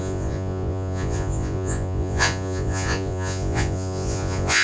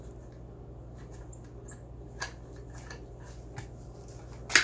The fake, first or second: first